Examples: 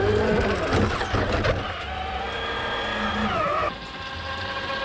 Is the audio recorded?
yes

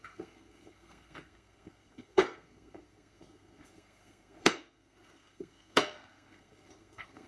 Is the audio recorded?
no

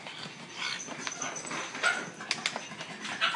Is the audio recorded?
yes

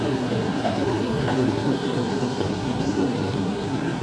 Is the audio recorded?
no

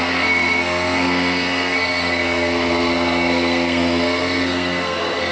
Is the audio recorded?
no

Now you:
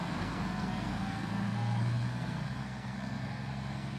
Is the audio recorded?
no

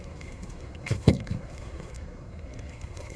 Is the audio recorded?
no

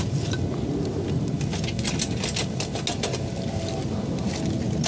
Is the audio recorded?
yes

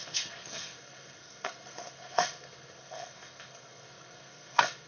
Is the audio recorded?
no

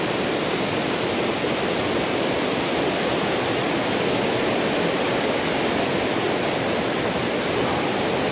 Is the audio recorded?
yes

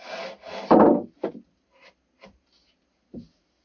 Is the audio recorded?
yes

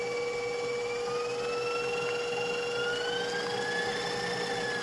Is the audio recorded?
yes